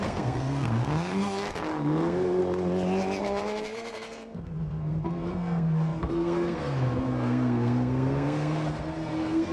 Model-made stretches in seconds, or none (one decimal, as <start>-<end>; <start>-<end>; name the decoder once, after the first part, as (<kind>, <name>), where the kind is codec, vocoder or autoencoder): 0.0-2.4 (codec, SNAC); 3.2-9.5